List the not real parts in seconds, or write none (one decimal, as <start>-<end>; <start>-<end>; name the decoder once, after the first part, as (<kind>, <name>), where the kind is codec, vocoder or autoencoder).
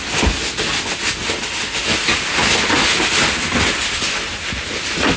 none